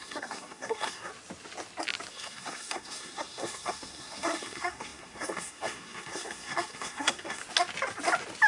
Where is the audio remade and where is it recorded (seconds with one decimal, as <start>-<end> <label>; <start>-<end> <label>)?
0.0-1.1 remade; 1.1-2.1 recorded; 2.1-7.4 remade; 7.4-8.5 recorded